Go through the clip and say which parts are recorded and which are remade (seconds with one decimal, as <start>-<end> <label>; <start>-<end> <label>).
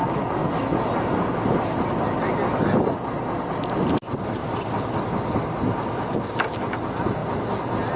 0.0-4.4 recorded; 4.4-5.0 remade; 5.0-7.2 recorded; 7.2-8.0 remade